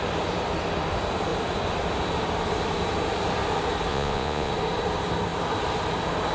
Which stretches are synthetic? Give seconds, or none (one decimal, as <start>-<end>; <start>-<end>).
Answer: 3.9-4.5